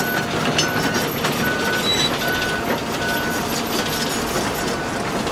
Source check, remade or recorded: recorded